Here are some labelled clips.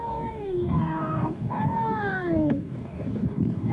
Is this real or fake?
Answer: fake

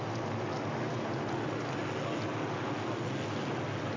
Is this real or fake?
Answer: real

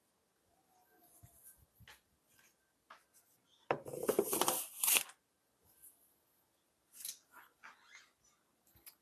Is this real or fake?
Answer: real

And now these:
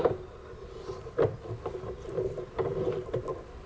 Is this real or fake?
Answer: real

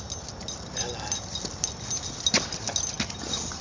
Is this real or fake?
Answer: real